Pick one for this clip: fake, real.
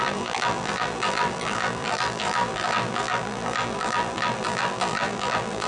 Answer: fake